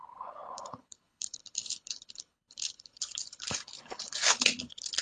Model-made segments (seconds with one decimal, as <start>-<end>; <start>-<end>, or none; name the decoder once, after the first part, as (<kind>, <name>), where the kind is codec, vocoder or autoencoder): 0.0-5.0 (codec, HILCodec)